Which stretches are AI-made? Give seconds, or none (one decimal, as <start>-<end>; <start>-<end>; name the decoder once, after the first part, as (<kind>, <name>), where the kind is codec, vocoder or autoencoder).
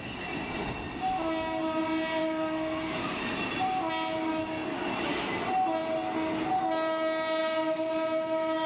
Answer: 2.2-3.2 (codec, DAC); 7.4-8.7